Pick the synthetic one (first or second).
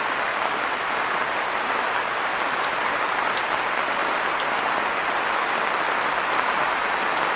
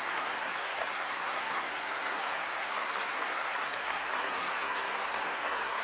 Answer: second